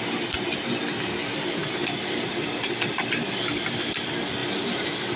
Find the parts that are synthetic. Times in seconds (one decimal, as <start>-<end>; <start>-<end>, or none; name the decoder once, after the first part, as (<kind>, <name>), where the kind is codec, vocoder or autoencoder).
none